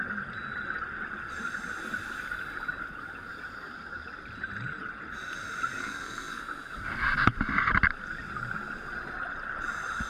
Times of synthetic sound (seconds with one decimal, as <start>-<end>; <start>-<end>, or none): 5.8-6.4